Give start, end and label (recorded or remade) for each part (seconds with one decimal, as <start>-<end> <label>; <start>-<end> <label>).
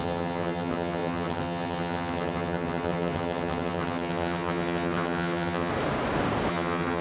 0.0-5.7 remade; 5.7-6.5 recorded; 6.5-7.0 remade